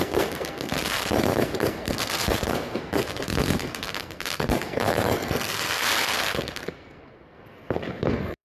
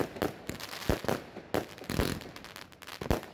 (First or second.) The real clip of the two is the second